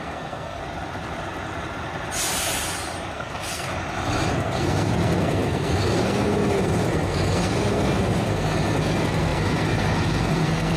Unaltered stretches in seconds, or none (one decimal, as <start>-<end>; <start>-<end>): 0.6-3.1; 3.7-4.3